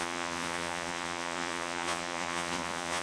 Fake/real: fake